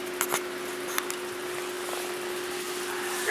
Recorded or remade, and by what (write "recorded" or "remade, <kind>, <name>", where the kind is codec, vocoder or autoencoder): recorded